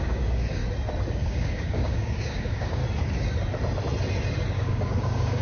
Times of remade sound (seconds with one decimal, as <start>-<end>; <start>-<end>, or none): 0.0-0.6; 1.1-2.8; 4.5-5.4